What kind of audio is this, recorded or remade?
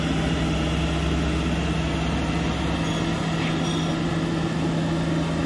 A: recorded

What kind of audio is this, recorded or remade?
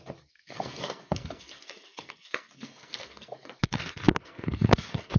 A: remade